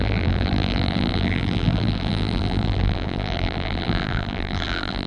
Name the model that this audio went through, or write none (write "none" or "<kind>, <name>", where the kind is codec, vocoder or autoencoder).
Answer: vocoder, BigVGAN v2